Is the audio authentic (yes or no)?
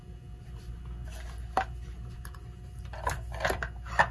yes